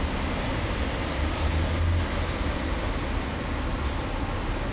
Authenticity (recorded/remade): recorded